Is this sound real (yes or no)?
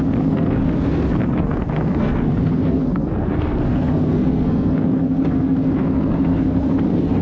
no